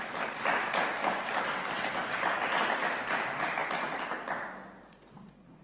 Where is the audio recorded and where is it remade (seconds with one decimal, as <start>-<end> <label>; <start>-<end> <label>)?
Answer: 0.0-5.6 recorded